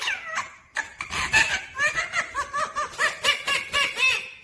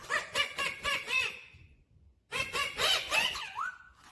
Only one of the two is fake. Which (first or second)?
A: second